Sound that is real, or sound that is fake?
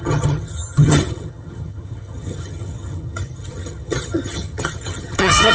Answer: fake